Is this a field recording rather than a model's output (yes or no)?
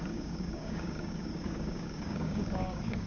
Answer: no